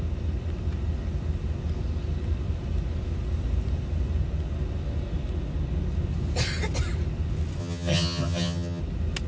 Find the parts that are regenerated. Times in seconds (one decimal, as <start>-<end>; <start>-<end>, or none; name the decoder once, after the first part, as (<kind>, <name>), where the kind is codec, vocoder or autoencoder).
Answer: 7.6-8.8 (vocoder, HiFi-GAN)